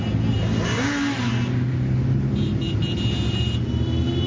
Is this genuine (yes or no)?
yes